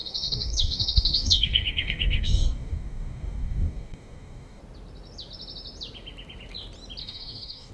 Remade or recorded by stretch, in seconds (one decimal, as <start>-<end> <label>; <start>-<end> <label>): 0.0-4.6 remade; 4.6-7.0 recorded; 7.0-7.7 remade